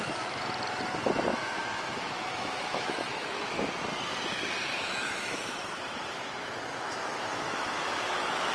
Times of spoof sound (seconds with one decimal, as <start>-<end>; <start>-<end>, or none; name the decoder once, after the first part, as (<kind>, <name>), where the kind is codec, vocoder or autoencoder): 1.3-3.7 (autoencoder, DAC-VAE); 4.7-8.5